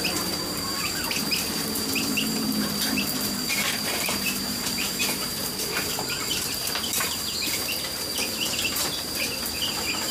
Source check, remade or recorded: remade